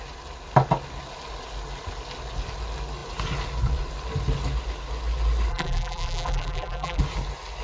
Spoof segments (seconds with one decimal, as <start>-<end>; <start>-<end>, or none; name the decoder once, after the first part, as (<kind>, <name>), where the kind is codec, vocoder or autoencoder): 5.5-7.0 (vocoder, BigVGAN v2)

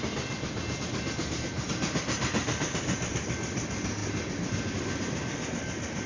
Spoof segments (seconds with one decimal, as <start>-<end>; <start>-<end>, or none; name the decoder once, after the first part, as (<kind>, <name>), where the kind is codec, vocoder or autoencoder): none

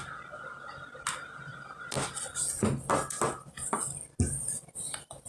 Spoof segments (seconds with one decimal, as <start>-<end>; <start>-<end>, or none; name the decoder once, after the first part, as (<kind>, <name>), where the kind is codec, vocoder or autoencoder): none

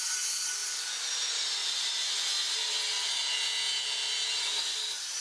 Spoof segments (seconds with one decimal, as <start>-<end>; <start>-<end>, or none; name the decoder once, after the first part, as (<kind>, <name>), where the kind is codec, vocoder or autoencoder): 1.6-3.1 (vocoder, BigVGAN v2); 4.5-5.2